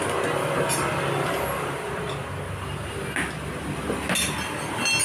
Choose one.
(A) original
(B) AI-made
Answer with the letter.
A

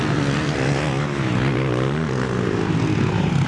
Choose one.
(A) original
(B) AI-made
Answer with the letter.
A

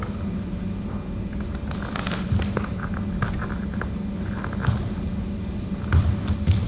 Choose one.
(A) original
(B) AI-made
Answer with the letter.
A